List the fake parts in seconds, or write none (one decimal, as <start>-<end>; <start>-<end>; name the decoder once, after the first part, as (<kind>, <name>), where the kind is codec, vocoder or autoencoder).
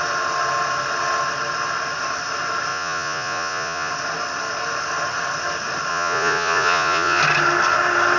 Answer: 2.7-3.9 (vocoder, Vocos); 5.9-7.2